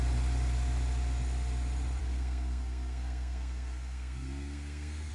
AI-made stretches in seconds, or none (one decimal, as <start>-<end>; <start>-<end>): 2.0-5.1